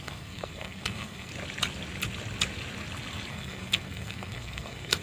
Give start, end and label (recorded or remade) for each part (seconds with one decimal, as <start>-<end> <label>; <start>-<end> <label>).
0.0-1.3 remade; 1.3-3.3 recorded; 3.3-5.0 remade